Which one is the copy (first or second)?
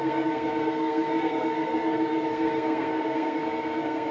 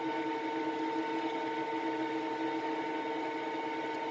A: first